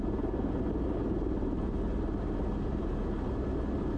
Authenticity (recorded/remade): recorded